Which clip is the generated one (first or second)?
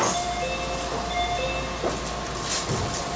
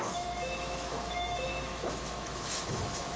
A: second